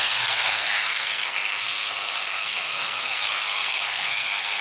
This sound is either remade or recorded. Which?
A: remade